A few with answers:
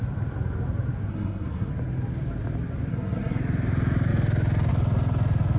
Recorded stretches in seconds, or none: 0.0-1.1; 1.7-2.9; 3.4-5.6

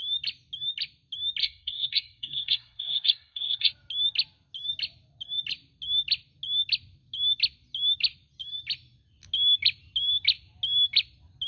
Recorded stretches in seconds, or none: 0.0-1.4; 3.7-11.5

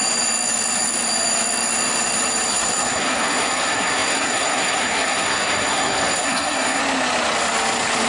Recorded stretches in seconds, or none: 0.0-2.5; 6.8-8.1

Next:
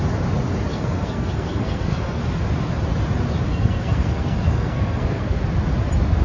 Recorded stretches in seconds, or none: 0.0-0.7; 2.2-3.5; 5.4-6.2

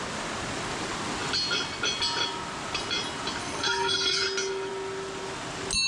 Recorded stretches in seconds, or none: 0.0-3.4; 4.2-5.9

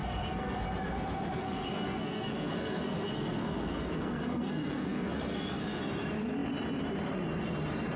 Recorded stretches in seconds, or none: 0.6-1.4; 5.8-8.0

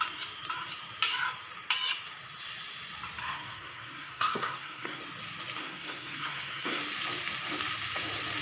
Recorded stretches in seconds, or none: 0.0-3.2; 5.0-5.6; 6.8-8.4